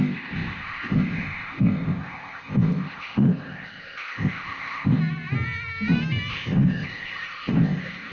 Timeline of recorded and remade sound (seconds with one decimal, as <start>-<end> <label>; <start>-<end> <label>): 0.0-5.0 remade; 5.0-6.3 recorded; 6.3-8.1 remade